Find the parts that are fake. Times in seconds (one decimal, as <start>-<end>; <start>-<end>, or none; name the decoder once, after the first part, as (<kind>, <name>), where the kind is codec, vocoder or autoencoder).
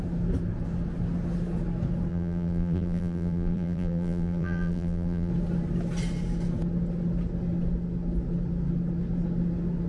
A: 2.1-5.3 (vocoder, BigVGAN v2)